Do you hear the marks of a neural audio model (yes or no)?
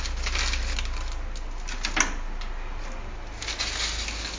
no